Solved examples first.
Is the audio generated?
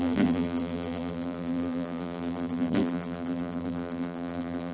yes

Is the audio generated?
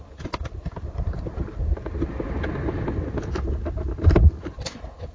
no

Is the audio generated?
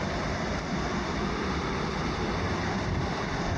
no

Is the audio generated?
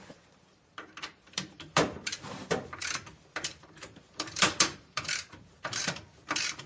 yes